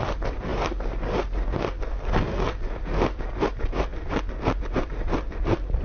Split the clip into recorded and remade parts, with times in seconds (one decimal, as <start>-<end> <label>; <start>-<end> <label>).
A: 0.0-5.8 recorded